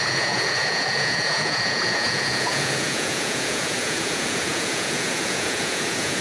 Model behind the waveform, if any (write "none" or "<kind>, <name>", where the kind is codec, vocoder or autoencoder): vocoder, Vocos